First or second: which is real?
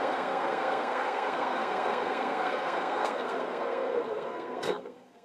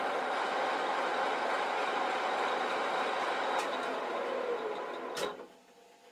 second